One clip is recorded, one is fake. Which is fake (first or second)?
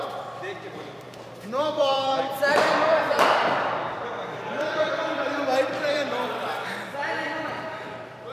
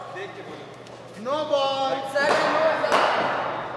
first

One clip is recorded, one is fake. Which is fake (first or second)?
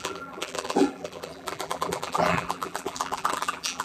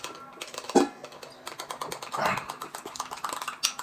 first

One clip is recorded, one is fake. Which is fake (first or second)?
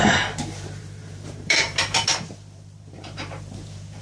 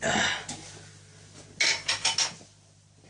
first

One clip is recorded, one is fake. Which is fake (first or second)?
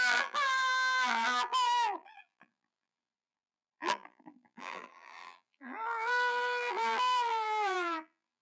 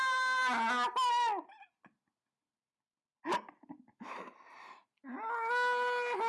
first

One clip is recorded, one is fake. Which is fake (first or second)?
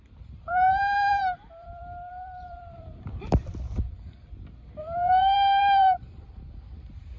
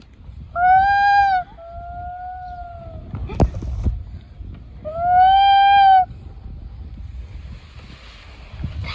first